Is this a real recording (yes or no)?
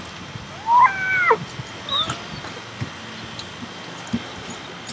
yes